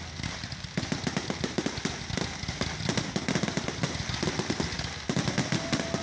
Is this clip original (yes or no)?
yes